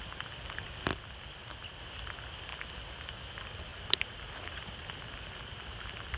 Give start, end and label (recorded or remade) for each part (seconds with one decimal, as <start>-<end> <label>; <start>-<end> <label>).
0.0-3.7 recorded; 3.7-4.9 remade; 4.9-6.2 recorded